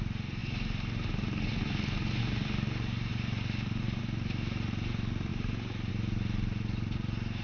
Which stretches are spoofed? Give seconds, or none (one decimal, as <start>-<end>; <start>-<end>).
none